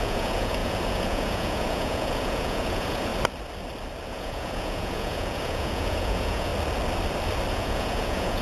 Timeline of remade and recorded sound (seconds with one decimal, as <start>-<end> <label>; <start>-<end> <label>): 0.0-3.1 remade; 3.1-4.1 recorded; 4.1-6.5 remade; 6.5-7.5 recorded; 7.5-8.4 remade